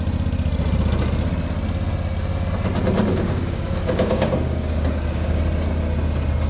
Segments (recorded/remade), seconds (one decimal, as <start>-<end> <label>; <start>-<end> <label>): 0.0-3.1 recorded; 3.1-5.4 remade; 5.4-6.5 recorded